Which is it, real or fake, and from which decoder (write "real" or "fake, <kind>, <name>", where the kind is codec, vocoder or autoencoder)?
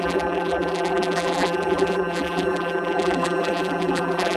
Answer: fake, vocoder, BigVGAN v2